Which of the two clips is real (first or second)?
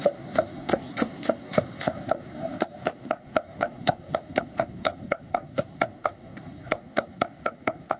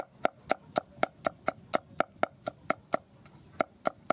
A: second